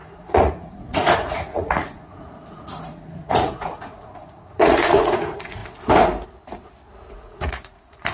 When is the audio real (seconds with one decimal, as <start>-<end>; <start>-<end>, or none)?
5.6-7.1